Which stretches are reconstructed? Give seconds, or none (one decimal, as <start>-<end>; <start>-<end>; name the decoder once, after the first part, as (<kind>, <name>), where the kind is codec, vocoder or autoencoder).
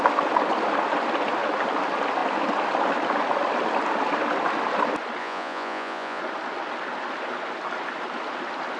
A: 5.2-6.2 (vocoder, Vocos)